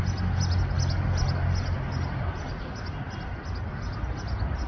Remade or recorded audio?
recorded